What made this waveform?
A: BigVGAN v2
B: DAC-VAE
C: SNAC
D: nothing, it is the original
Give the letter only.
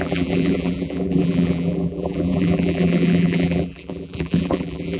A